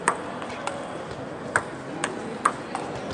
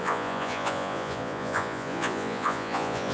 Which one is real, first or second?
first